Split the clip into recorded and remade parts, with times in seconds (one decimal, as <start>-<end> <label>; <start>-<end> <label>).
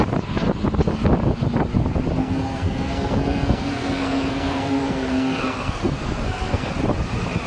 0.0-2.2 recorded; 2.2-6.7 remade; 6.7-7.5 recorded